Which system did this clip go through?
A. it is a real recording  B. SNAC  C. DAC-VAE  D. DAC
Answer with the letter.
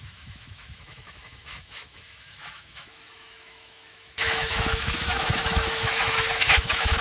C